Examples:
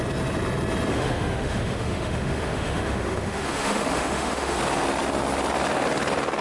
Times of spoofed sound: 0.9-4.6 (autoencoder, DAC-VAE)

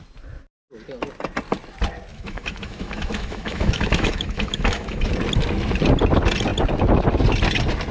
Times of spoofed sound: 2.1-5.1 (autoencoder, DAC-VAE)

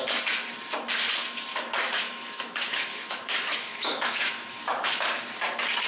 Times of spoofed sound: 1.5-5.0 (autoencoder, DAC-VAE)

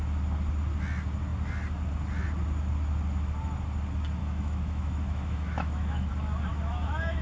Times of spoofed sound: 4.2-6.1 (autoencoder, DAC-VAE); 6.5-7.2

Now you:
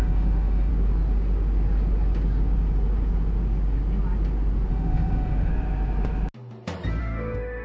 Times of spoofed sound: 0.0-0.7 (autoencoder, DAC-VAE); 4.7-5.5; 7.0-7.6